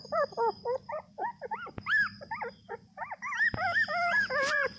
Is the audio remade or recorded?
remade